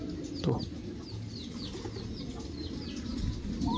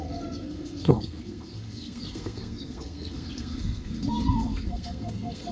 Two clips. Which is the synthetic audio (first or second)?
second